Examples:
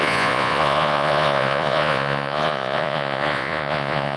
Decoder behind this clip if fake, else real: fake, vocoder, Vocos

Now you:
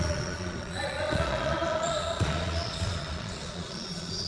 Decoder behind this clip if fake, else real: fake, vocoder, Vocos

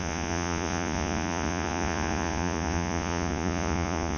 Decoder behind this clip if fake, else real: fake, vocoder, Vocos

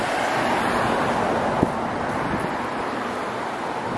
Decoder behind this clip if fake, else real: real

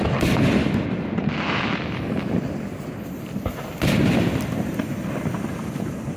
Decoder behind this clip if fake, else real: real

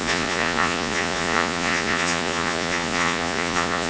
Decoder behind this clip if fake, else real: fake, vocoder, Vocos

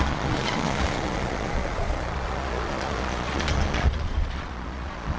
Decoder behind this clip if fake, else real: fake, vocoder, Vocos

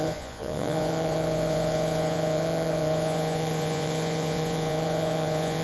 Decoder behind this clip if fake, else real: fake, vocoder, Vocos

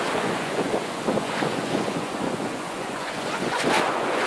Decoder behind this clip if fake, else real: fake, vocoder, Vocos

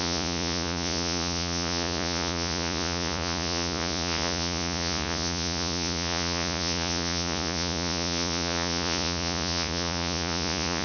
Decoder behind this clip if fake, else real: fake, vocoder, Vocos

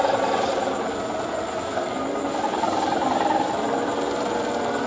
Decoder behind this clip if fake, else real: real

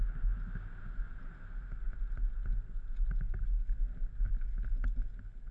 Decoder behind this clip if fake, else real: real